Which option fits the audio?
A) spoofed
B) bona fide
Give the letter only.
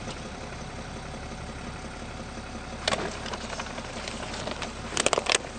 B